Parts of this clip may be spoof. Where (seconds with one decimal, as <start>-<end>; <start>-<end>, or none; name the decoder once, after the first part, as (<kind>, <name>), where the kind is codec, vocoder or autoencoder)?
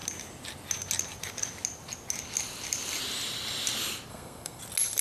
4.1-4.6 (codec, SNAC)